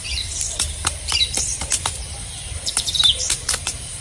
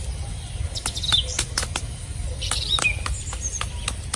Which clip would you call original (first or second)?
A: second